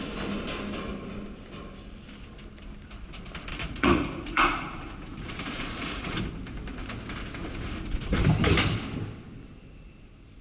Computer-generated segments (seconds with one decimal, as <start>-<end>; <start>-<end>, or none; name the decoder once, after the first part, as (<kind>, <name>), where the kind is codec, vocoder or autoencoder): 3.5-6.2 (vocoder, Vocos); 7.4-8.2

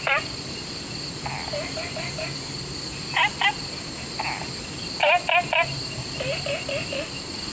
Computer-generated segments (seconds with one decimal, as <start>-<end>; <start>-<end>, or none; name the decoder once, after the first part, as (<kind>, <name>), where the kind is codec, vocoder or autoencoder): none

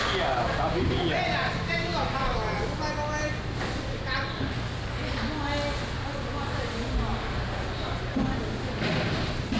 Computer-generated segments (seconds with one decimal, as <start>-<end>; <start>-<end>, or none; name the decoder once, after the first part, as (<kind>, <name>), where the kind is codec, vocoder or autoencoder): none

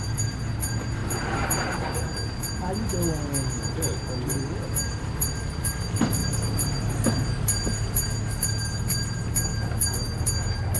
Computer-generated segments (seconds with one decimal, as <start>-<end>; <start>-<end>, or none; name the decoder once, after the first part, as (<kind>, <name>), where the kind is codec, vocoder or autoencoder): none

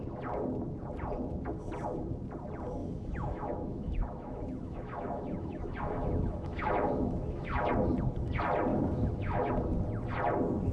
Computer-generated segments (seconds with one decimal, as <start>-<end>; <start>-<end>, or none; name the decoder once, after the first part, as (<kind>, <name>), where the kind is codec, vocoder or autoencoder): 2.8-7.7 (autoencoder, DAC-VAE); 8.7-9.5

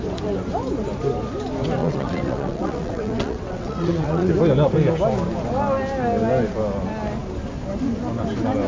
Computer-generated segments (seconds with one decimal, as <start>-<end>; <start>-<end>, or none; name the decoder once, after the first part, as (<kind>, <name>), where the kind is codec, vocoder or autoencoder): 1.8-4.3 (vocoder, WaveNeXt)

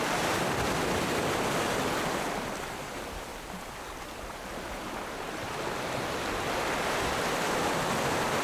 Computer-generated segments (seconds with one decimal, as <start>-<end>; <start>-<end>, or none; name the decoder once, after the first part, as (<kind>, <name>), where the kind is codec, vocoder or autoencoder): none